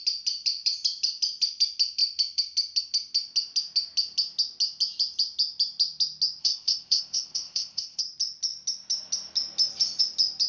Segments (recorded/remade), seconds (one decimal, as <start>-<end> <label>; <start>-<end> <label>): 0.0-6.4 recorded; 6.4-8.0 remade; 8.0-10.5 recorded